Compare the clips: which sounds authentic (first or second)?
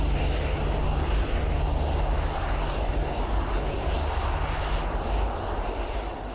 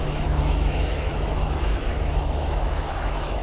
first